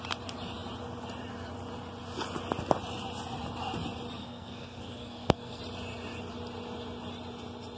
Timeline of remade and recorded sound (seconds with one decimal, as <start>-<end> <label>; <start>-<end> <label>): 0.0-4.2 recorded; 4.2-5.6 remade; 5.6-7.8 recorded